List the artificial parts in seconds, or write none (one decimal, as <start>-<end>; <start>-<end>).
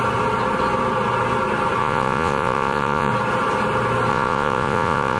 1.8-3.1; 4.1-5.2